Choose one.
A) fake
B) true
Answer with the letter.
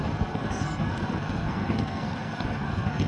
A